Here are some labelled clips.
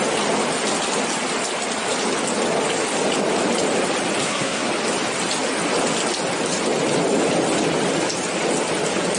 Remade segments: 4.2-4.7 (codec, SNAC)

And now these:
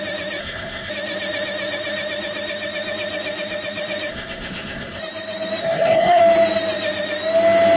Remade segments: 0.4-0.9 (codec, SNAC); 4.1-5.0; 5.6-6.2